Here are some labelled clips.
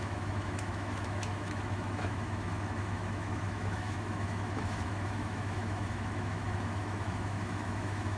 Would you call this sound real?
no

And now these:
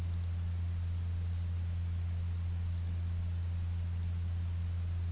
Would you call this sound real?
yes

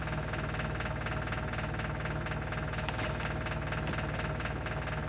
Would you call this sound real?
yes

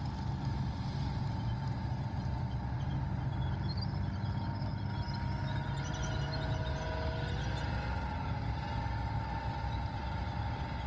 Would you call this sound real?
yes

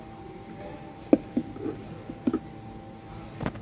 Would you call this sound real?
yes